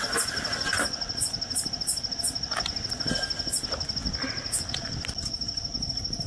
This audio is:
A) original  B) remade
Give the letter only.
A